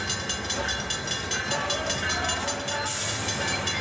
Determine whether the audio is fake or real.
real